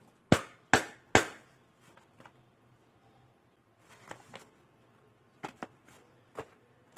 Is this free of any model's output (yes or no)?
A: yes